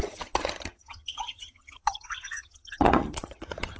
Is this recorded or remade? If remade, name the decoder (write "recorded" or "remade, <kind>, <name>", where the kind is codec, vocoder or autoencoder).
remade, vocoder, HiFi-GAN